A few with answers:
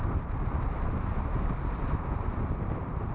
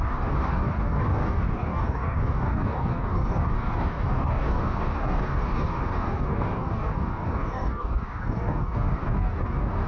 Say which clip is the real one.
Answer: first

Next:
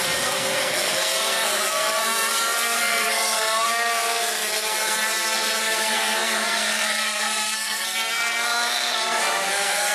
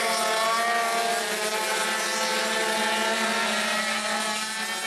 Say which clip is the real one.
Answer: second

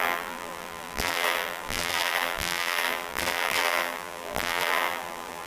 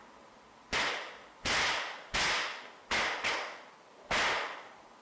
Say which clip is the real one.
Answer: second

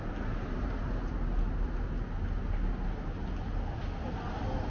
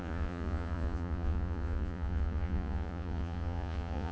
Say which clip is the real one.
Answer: first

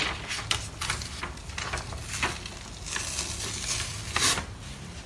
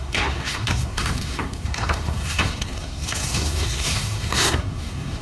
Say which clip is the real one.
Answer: first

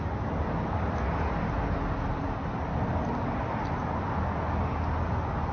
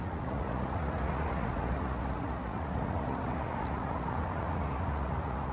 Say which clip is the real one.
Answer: first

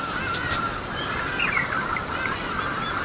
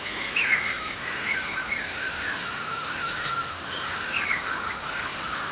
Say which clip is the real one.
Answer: first